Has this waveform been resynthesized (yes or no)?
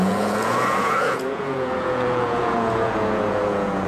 yes